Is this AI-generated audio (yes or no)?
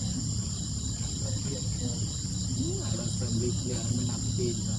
no